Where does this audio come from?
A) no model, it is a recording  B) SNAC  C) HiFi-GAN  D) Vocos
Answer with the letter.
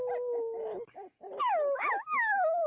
A